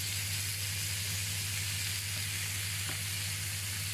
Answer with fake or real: real